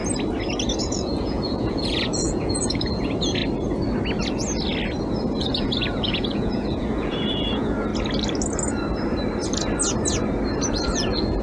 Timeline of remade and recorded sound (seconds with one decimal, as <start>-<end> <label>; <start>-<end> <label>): 0.0-0.8 recorded; 0.8-3.4 remade; 3.4-5.4 recorded; 5.4-7.9 remade; 7.9-10.7 recorded; 10.7-11.4 remade